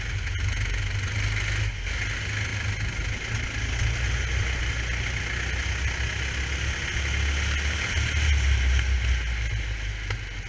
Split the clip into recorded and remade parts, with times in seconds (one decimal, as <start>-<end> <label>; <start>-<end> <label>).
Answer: 0.0-10.5 recorded